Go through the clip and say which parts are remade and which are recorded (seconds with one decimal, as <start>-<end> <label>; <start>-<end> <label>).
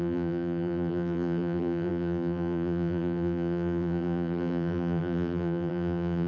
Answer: 0.0-6.3 remade